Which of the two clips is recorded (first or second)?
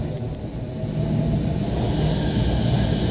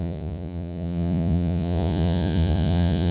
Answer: first